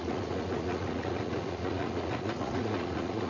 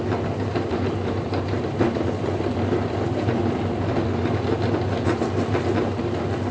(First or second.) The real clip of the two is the second